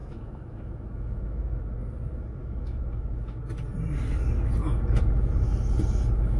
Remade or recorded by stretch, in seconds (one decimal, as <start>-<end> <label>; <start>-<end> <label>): 0.0-1.6 remade; 1.6-2.4 recorded; 2.4-3.4 remade; 3.4-6.4 recorded